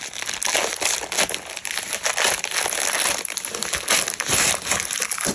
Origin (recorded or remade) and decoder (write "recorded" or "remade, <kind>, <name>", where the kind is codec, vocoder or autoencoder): recorded